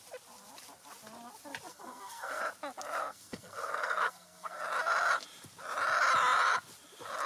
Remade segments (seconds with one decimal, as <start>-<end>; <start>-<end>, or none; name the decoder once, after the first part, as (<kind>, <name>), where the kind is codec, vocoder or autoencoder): 1.7-2.4 (codec, SNAC); 3.0-4.6

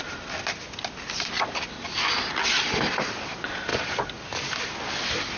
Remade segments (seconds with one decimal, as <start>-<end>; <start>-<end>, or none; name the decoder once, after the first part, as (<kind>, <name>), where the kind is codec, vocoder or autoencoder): none

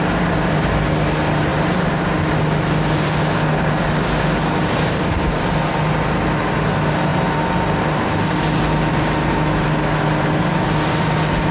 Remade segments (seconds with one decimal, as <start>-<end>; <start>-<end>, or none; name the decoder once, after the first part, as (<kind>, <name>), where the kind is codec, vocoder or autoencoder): none

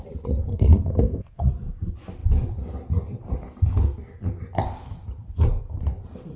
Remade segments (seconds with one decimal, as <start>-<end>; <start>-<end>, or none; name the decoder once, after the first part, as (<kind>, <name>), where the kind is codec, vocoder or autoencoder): 0.5-1.5 (codec, SNAC)

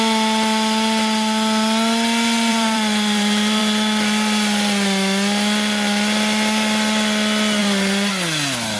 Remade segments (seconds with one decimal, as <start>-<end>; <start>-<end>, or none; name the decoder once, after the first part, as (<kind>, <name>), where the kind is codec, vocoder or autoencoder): 2.5-3.6 (vocoder, BigVGAN v2); 7.6-8.1

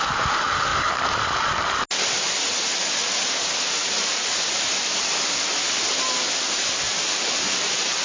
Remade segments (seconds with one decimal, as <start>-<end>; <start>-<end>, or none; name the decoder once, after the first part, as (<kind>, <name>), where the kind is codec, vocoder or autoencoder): none

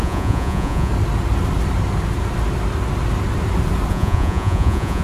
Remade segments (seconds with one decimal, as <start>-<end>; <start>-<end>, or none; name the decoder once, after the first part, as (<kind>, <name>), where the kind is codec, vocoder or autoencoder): 0.0-0.9 (vocoder, Vocos); 3.9-5.0

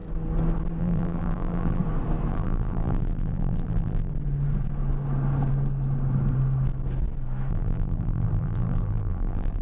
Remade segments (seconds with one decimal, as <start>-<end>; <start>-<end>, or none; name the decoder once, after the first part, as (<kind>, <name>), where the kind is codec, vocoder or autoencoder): 0.8-1.8 (vocoder, BigVGAN v2); 2.3-4.1; 7.5-9.6